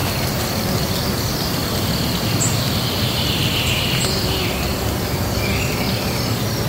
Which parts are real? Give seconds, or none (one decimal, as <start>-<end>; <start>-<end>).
0.0-1.6; 5.6-6.7